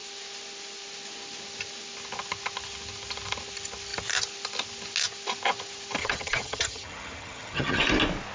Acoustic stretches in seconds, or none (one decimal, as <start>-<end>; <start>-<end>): 0.0-6.0; 7.8-8.3